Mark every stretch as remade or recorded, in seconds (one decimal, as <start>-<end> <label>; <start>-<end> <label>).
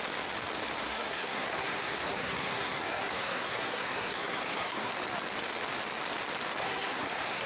0.0-0.8 recorded; 0.8-4.9 remade; 4.9-6.6 recorded; 6.6-7.5 remade